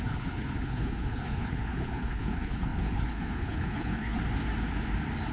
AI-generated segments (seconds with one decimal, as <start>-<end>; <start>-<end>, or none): 0.0-4.2